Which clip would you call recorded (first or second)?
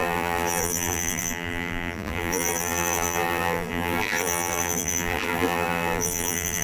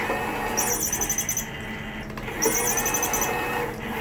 second